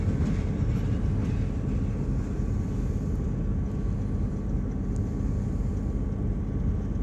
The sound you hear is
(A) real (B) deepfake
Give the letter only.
A